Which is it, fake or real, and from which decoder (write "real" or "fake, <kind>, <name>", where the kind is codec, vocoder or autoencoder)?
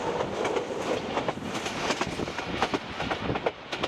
real